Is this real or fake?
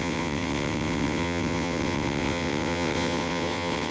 fake